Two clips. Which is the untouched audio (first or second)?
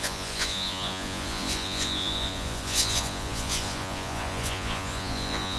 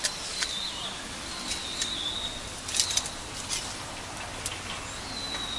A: second